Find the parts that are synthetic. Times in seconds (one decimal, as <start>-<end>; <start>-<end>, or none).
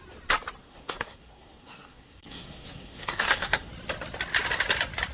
0.6-3.7